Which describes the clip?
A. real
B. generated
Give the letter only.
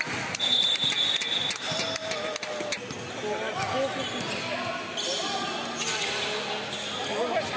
A